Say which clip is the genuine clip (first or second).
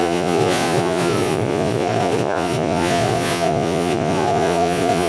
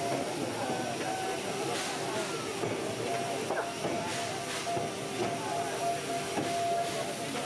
second